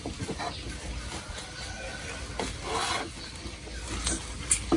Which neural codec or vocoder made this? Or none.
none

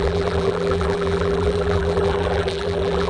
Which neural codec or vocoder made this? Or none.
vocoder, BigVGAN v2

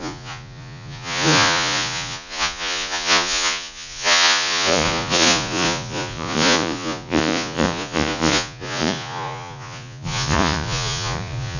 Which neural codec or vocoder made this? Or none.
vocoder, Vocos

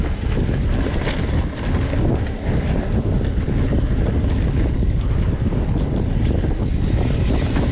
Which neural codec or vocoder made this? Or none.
none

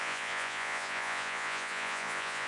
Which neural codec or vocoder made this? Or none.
vocoder, Vocos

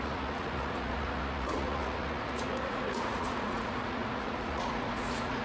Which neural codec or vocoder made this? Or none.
vocoder, Vocos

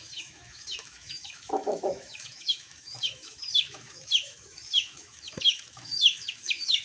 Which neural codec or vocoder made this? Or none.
autoencoder, DAC-VAE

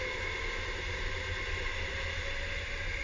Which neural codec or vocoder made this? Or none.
none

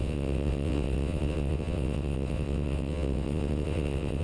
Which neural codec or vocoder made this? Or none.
vocoder, WaveNeXt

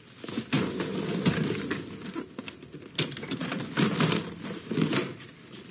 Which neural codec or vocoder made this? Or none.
none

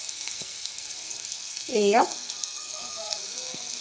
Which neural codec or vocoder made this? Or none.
codec, SNAC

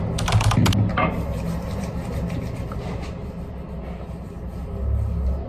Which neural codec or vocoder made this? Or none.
none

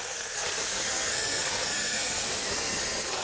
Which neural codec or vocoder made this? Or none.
codec, SNAC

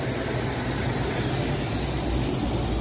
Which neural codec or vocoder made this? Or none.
none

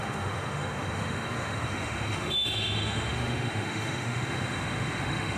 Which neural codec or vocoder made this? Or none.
autoencoder, DAC-VAE